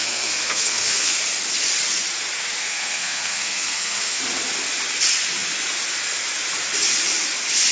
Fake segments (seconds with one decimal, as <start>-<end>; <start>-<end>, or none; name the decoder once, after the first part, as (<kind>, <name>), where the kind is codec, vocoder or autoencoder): 0.0-1.2 (codec, SNAC); 2.6-4.2